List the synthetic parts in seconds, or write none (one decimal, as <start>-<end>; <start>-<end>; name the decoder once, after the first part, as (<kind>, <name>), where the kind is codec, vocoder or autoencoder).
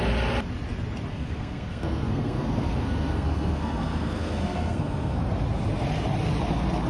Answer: 1.1-5.2 (codec, SNAC)